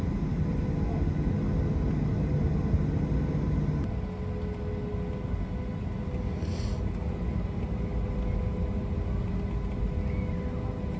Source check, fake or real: real